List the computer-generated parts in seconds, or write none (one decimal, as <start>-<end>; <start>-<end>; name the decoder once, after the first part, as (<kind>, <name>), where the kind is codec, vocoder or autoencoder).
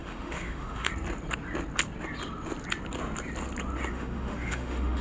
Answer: 0.0-0.9 (autoencoder, DAC-VAE); 3.9-5.0